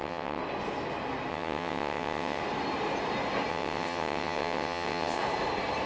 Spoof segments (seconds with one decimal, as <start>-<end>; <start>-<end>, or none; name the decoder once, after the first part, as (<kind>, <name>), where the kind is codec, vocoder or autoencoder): 0.0-0.4 (vocoder, WaveNeXt); 1.3-2.4; 3.5-5.2